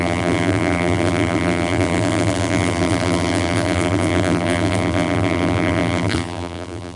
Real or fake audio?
fake